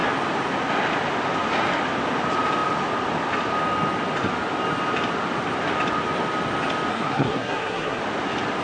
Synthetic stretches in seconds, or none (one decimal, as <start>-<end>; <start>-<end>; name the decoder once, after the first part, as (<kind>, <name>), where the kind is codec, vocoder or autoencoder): 6.9-8.0 (codec, SNAC)

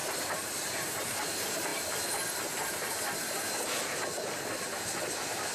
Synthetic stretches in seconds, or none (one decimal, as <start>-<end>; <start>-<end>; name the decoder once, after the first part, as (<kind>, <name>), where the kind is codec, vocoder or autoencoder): none